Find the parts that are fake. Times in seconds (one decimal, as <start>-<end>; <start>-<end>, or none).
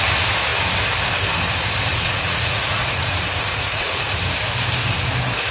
1.9-4.2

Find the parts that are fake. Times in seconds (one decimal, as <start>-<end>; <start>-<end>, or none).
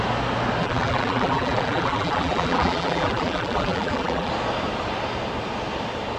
0.6-4.3